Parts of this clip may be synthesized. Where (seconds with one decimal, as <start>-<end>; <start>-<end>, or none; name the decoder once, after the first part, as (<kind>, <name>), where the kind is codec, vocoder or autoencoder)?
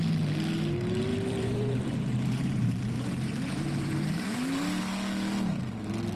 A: 1.1-4.8 (vocoder, BigVGAN v2)